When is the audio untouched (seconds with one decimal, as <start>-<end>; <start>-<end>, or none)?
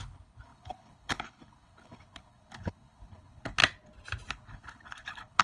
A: 3.6-4.3